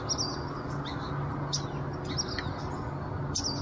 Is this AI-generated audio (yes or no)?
no